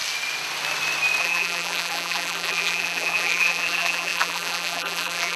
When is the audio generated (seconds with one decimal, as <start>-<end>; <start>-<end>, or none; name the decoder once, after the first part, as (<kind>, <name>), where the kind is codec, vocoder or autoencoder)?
1.2-5.4 (vocoder, BigVGAN v2)